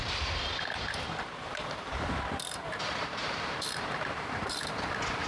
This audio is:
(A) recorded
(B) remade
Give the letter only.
B